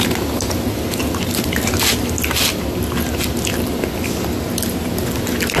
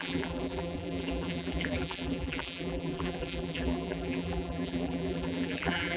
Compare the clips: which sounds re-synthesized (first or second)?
second